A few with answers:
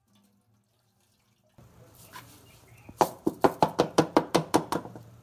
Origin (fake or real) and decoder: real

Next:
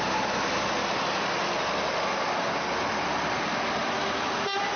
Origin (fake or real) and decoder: real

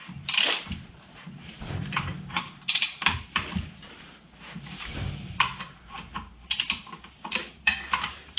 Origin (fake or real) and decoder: fake, vocoder, BigVGAN v2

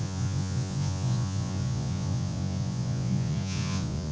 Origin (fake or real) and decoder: fake, vocoder, Vocos